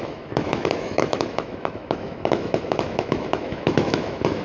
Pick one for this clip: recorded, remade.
remade